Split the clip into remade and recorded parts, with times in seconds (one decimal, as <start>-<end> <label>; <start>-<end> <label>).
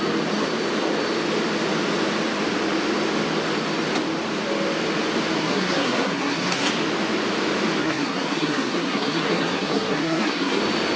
0.0-5.4 recorded; 5.4-6.7 remade; 6.7-7.8 recorded; 7.8-10.6 remade; 10.6-11.0 recorded